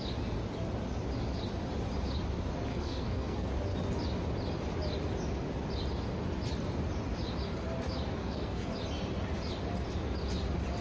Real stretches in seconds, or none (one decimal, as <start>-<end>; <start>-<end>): 0.0-2.7; 3.5-8.2; 8.7-10.8